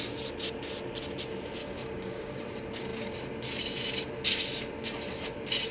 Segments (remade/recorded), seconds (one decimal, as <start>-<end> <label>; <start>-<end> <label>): 0.0-1.6 recorded; 1.6-2.4 remade; 2.4-5.7 recorded

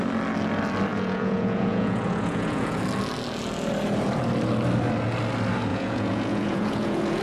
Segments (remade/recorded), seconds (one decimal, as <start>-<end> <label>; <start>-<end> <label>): 0.0-0.9 recorded; 0.9-2.8 remade; 2.8-5.7 recorded; 5.7-7.2 remade

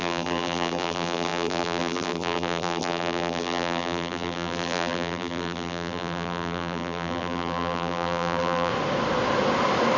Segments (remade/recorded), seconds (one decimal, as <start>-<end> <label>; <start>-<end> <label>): 0.0-8.7 remade; 8.7-10.0 recorded

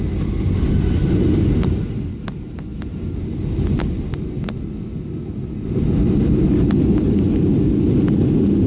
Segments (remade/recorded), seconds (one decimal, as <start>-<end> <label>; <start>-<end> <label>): 0.0-8.7 recorded

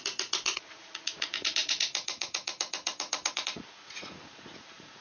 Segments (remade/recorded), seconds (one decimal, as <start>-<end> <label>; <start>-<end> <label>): 0.0-5.0 remade

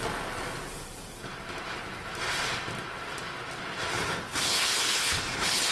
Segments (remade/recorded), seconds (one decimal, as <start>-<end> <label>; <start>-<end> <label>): 0.0-3.9 recorded; 3.9-5.7 remade